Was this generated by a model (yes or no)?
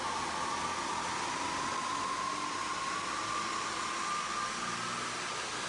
no